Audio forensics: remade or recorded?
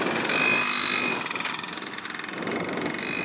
recorded